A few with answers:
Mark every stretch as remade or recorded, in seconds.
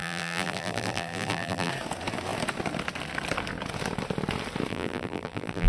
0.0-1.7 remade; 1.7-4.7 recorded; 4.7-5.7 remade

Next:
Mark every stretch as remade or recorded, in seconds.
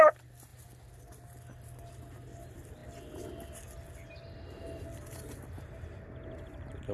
0.0-6.9 recorded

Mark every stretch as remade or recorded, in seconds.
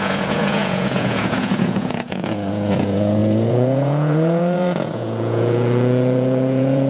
0.0-6.9 remade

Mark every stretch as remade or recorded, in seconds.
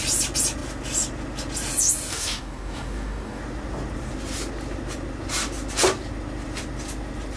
0.0-2.1 recorded; 2.1-3.4 remade; 3.4-7.4 recorded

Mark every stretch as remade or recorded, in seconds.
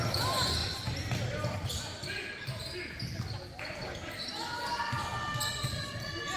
0.0-6.4 recorded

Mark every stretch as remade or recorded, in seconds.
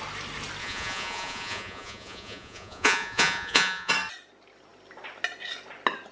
0.0-0.6 recorded; 0.6-3.9 remade; 3.9-6.1 recorded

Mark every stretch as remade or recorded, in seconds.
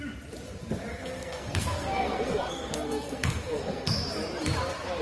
0.0-0.9 recorded; 0.9-3.9 remade; 3.9-5.0 recorded